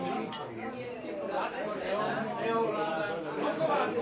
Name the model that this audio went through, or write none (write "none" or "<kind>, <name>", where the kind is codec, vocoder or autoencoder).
vocoder, BigVGAN v2